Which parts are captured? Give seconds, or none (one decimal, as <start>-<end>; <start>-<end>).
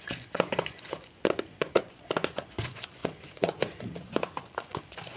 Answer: none